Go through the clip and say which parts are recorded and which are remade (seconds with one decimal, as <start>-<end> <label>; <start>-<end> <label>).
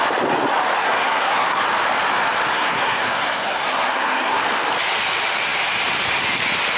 0.0-0.8 recorded; 0.8-1.6 remade; 1.6-2.5 recorded; 2.5-4.4 remade; 4.4-6.8 recorded